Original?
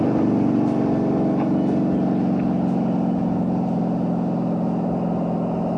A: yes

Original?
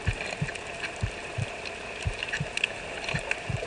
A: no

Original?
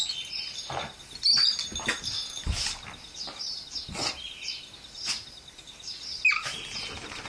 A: yes